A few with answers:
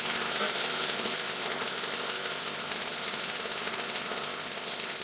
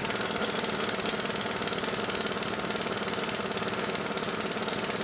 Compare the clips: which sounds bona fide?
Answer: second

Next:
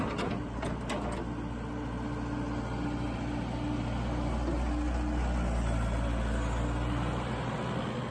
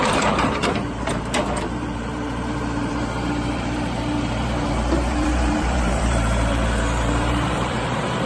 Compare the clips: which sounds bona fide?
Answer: first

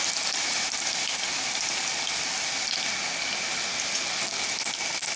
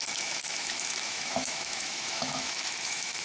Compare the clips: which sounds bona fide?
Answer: first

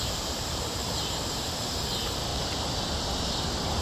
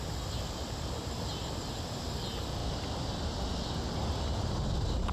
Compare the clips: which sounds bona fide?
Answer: second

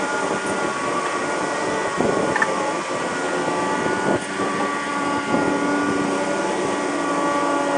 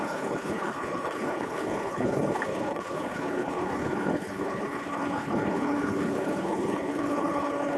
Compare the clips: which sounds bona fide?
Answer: first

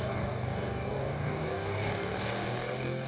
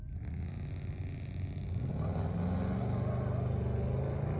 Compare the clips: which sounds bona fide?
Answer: second